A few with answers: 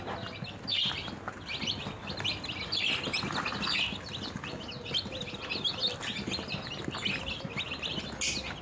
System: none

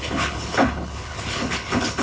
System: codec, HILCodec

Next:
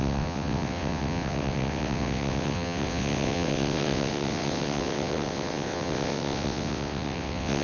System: vocoder, WaveNeXt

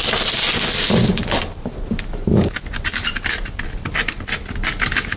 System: none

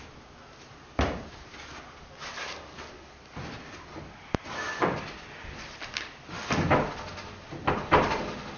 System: none